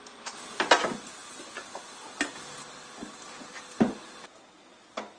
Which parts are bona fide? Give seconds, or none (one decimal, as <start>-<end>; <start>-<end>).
0.0-5.2